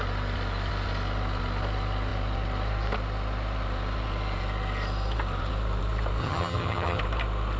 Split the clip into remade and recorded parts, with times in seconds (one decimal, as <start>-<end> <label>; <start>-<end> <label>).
0.0-6.2 recorded; 6.2-7.0 remade; 7.0-7.6 recorded